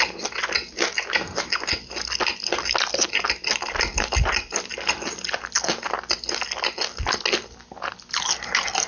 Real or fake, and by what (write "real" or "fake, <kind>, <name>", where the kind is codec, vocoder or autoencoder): real